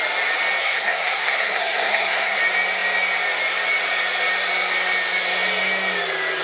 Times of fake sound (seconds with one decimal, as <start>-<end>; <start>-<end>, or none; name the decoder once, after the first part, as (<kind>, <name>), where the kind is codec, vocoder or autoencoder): 0.6-2.4 (codec, SNAC)